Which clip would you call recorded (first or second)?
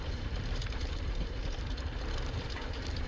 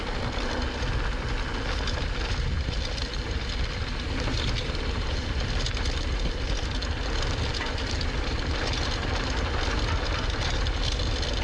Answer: second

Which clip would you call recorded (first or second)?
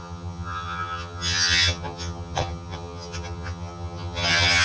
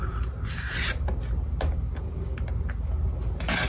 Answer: second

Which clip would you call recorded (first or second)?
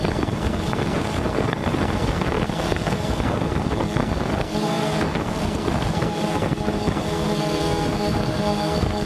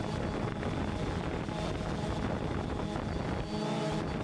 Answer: second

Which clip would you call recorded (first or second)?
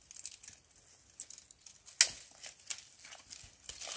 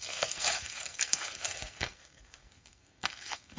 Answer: first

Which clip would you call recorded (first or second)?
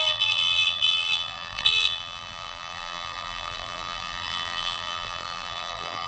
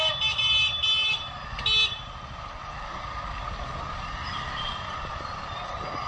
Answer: second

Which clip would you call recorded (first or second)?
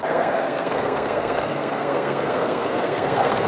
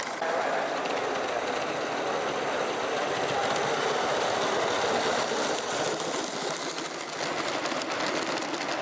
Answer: second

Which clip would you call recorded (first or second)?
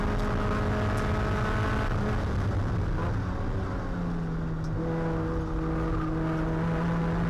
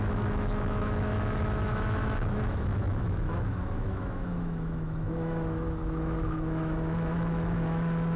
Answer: first